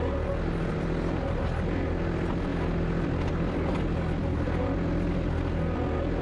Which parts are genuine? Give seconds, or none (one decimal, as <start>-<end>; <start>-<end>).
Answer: 0.0-6.2